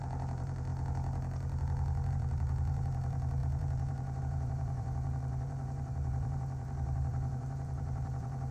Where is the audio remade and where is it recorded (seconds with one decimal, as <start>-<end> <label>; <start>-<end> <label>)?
0.0-0.7 remade; 0.7-2.1 recorded; 2.1-8.5 remade